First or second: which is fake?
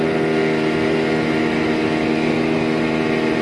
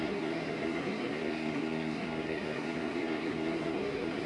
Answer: second